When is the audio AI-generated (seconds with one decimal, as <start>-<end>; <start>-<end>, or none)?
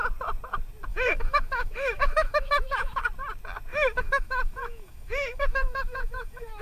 0.9-3.0; 3.7-6.6